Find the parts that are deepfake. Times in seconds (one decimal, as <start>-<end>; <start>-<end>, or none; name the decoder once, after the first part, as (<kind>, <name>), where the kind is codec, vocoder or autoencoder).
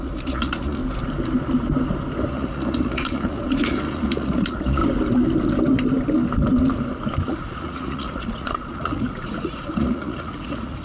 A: 0.0-0.8 (vocoder, Vocos); 2.3-4.8; 7.3-10.8